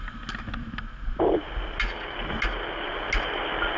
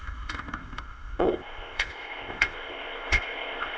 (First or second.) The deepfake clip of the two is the second